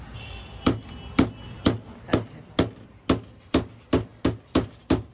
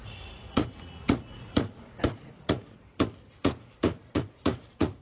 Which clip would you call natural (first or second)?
first